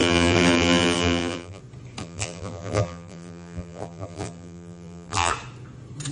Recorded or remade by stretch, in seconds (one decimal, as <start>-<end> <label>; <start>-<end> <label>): 0.0-1.6 remade; 1.6-2.0 recorded; 2.0-5.3 remade; 5.3-6.1 recorded